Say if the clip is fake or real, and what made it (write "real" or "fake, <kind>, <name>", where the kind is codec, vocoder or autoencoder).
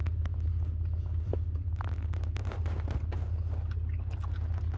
real